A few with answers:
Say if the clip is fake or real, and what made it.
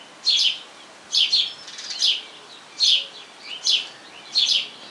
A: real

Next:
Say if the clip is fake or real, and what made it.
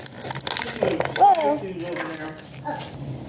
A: real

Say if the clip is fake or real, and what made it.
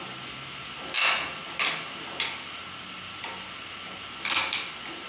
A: real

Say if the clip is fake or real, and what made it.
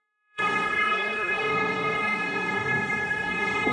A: fake, codec, SNAC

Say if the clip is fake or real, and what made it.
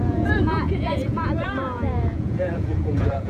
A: fake, vocoder, Vocos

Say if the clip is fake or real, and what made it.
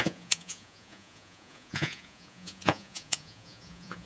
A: fake, vocoder, Vocos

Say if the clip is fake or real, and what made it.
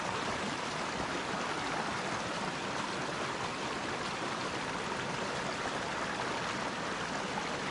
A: real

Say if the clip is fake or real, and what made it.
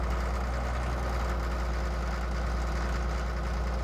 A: real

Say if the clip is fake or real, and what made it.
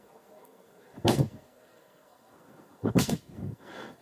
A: fake, codec, SNAC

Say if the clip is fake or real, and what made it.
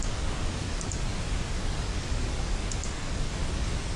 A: fake, codec, DAC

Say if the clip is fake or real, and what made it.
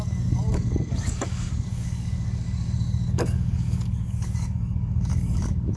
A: fake, codec, DAC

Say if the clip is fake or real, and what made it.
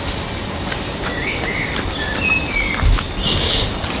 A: real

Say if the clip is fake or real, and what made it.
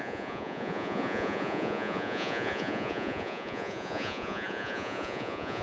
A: fake, vocoder, Vocos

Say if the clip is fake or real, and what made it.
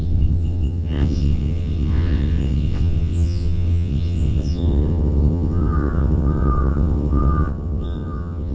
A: fake, vocoder, WaveNeXt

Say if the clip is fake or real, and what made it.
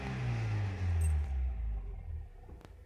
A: real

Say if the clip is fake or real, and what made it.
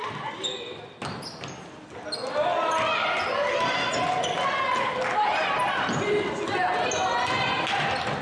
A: real